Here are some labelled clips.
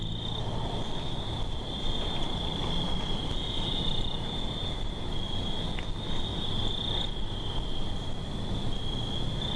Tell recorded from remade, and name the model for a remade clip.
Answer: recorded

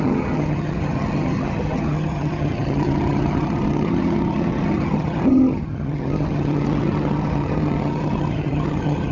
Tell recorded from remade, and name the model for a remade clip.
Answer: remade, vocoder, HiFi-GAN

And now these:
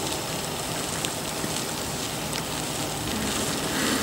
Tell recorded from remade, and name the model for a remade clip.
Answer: recorded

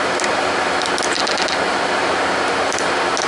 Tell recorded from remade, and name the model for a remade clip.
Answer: recorded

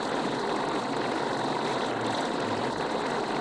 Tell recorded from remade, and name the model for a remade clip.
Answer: recorded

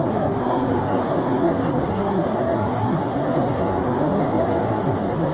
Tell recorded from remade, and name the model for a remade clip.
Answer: remade, codec, SNAC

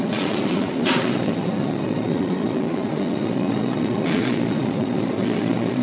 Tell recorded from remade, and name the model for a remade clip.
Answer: remade, vocoder, Vocos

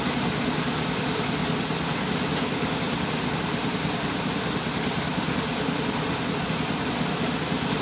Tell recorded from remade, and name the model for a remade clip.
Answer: recorded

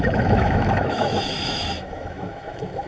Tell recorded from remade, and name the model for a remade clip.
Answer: remade, autoencoder, DAC-VAE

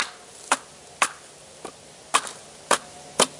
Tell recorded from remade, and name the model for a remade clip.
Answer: recorded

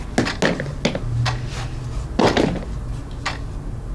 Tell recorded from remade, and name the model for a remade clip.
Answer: recorded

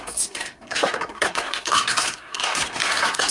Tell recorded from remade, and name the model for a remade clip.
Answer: remade, codec, SNAC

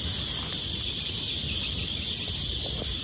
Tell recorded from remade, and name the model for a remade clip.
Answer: recorded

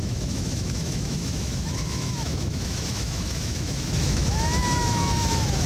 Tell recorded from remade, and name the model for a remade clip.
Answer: remade, autoencoder, DAC-VAE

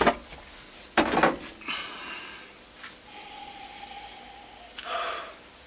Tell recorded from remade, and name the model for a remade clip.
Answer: recorded